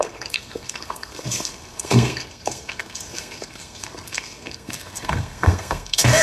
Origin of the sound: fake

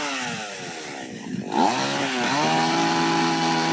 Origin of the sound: real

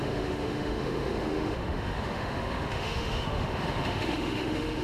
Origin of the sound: fake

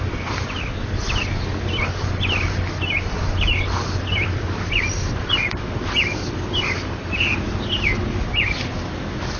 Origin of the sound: real